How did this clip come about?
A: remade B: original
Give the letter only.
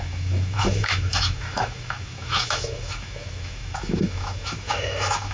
A